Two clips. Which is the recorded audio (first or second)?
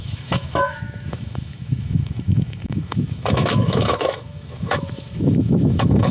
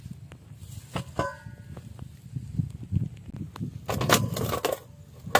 second